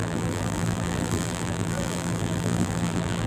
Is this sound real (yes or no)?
no